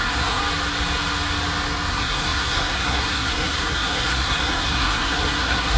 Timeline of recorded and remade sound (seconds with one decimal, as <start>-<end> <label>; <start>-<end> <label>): 0.0-0.4 remade; 0.4-1.9 recorded; 1.9-5.8 remade